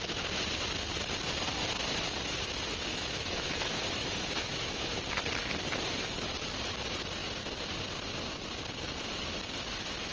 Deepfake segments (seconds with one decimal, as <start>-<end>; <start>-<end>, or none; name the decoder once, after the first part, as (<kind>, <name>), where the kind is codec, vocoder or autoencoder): 2.9-5.0 (autoencoder, DAC-VAE)